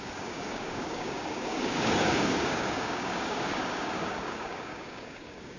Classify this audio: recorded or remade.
remade